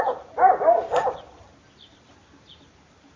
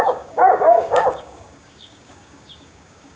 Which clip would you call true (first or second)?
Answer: first